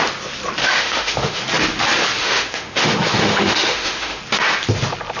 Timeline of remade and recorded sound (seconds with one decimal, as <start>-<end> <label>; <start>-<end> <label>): 0.0-0.6 recorded; 0.6-1.4 remade; 1.4-2.2 recorded; 2.2-4.2 remade; 4.2-5.2 recorded